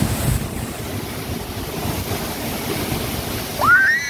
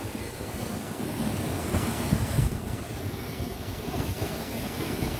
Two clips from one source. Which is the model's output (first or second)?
second